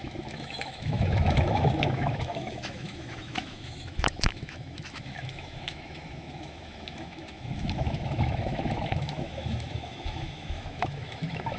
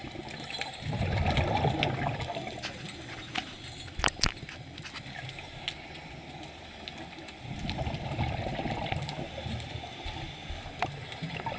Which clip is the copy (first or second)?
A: first